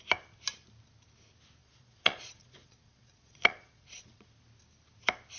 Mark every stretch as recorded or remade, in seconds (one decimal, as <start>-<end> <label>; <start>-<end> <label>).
0.0-1.6 recorded; 1.6-4.3 remade; 4.3-5.4 recorded